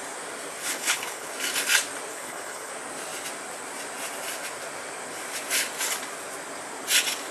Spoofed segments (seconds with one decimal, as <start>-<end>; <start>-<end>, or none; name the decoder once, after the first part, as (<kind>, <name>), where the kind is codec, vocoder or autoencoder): 0.6-1.3 (codec, HILCodec); 2.1-2.7